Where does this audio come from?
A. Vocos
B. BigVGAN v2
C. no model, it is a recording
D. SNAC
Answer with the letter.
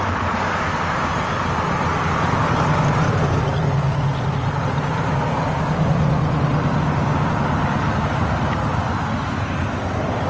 C